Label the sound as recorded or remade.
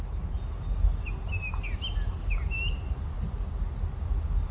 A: recorded